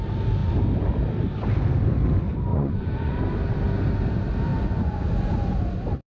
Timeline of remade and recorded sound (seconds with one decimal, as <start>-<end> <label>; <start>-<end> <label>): 0.0-2.5 recorded; 2.5-3.2 remade; 3.2-4.5 recorded; 4.5-5.3 remade; 5.3-6.1 recorded